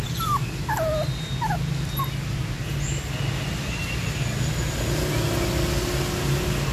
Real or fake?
real